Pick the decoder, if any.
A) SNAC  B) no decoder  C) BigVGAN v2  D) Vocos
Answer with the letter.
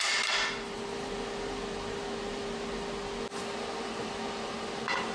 B